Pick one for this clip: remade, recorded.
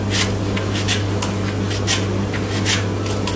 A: recorded